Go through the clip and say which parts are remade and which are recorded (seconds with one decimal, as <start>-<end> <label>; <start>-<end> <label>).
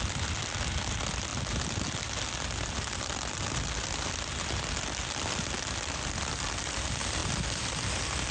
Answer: 0.0-8.3 recorded